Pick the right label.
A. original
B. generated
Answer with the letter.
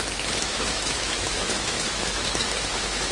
B